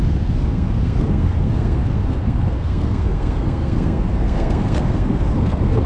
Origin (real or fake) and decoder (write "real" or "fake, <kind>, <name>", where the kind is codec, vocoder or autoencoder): fake, codec, SNAC